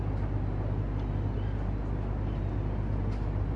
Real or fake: real